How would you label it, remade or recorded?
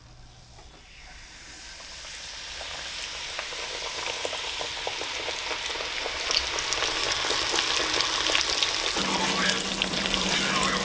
recorded